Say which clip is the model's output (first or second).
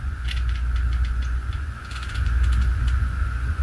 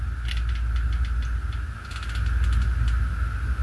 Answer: first